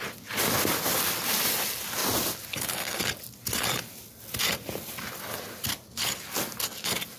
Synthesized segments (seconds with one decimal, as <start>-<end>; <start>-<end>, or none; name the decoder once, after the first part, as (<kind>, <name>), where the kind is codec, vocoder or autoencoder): none